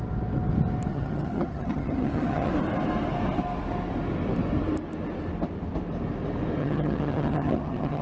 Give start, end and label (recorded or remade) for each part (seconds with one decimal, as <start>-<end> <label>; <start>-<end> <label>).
0.0-0.9 recorded; 0.9-2.5 remade; 2.5-6.6 recorded; 6.6-8.0 remade